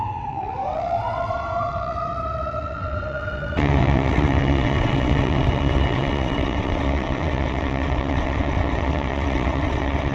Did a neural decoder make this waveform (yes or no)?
yes